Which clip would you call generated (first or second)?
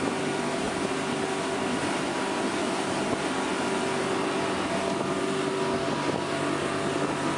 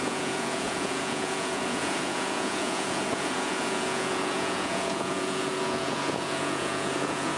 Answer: second